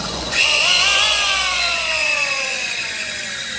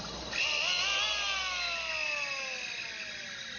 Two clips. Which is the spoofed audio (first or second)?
first